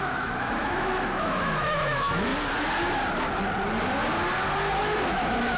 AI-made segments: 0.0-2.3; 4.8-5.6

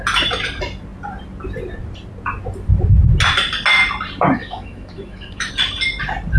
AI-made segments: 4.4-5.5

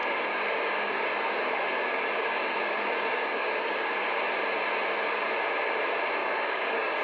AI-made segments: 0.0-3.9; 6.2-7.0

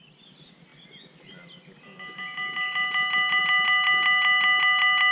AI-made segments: none

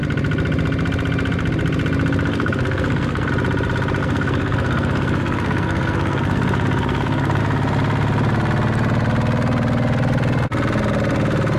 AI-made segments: 2.3-3.3; 4.0-7.4